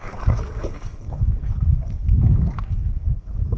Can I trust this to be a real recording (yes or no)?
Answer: no